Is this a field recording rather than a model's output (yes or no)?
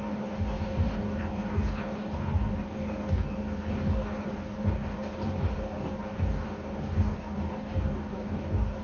no